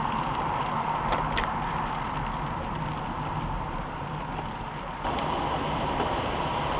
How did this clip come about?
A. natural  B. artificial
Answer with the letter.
A